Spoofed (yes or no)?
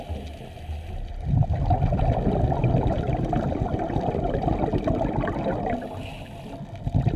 no